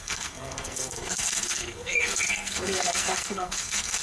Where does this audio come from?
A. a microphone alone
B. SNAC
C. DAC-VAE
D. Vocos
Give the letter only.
B